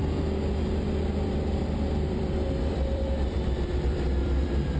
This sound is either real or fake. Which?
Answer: fake